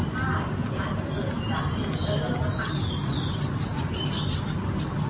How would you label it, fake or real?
real